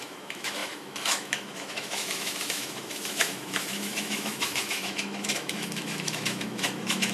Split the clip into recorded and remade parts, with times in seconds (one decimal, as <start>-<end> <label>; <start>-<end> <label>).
0.0-7.1 remade